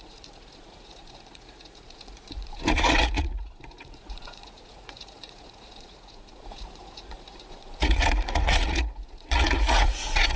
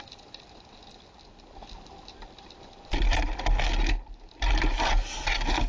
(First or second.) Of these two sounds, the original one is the second